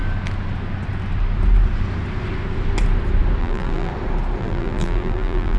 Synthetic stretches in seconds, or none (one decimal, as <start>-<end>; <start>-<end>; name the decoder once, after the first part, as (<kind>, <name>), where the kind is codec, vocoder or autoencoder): 3.4-3.9 (vocoder, BigVGAN v2); 4.4-5.6